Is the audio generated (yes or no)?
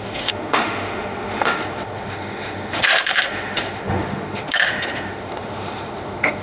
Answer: yes